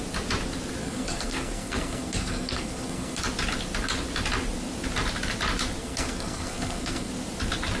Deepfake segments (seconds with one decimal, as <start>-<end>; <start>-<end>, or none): 0.8-3.2; 5.8-7.1